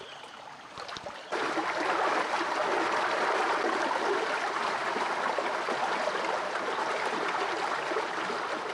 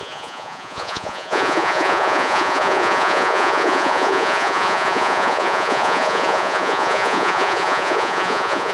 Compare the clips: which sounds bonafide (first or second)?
first